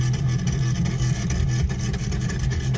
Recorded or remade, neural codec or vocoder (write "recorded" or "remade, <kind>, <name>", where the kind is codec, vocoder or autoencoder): recorded